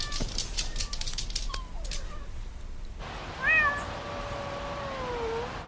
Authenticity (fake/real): real